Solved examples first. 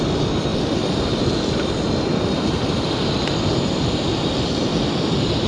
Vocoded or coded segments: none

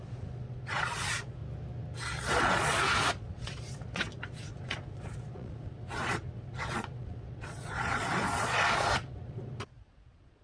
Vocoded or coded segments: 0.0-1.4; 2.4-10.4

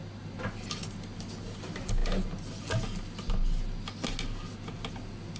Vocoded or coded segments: none